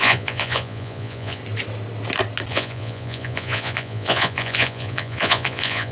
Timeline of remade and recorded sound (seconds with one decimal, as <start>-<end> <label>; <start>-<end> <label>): 0.0-1.4 remade; 1.4-2.5 recorded; 2.5-5.9 remade